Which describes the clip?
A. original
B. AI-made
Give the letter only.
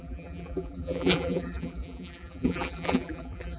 B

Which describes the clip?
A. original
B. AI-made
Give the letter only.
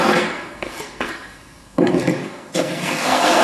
B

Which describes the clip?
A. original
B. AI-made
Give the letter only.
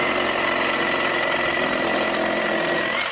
A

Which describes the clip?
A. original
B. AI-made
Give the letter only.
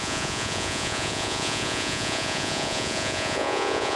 B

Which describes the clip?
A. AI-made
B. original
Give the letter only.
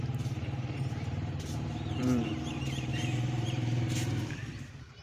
A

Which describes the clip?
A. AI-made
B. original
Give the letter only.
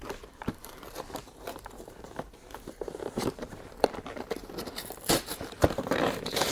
A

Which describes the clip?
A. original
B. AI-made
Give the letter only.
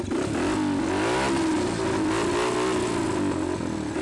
A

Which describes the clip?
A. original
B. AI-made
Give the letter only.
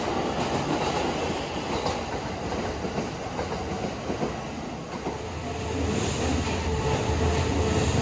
A